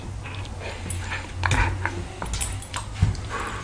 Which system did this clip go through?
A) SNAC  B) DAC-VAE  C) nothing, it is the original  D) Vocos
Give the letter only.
C